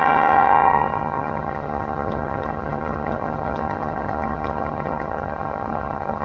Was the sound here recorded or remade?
remade